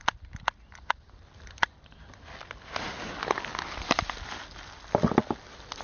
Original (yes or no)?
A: yes